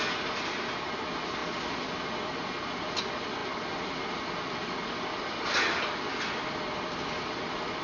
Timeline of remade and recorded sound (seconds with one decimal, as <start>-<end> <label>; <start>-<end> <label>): 0.0-7.8 recorded